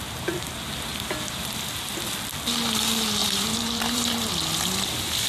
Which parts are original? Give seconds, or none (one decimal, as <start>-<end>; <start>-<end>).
0.0-3.2; 4.3-5.3